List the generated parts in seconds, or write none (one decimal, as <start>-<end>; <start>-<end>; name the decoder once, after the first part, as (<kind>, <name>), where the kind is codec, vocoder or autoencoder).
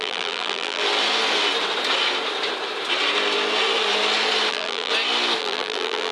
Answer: 0.0-0.8 (vocoder, BigVGAN v2); 4.5-4.9; 5.4-6.1